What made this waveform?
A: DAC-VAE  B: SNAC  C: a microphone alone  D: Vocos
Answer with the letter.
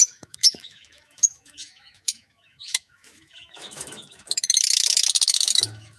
A